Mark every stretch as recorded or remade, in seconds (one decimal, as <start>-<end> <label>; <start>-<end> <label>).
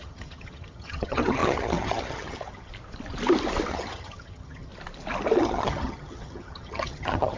0.0-2.7 remade; 2.7-3.7 recorded; 3.7-4.7 remade; 4.7-5.4 recorded; 5.4-7.4 remade